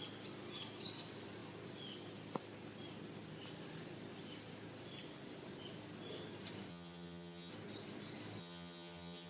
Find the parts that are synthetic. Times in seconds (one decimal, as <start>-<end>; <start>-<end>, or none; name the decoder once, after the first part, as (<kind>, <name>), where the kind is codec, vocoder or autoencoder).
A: 6.7-7.5 (vocoder, HiFi-GAN); 8.4-9.3